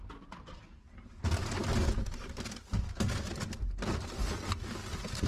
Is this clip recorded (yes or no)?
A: yes